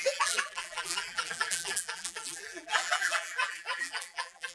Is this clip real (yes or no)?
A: no